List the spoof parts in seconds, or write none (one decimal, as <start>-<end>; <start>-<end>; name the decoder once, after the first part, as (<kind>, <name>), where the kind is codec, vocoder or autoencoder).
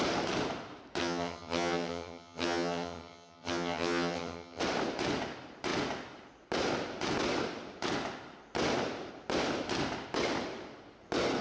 1.0-4.6 (vocoder, HiFi-GAN)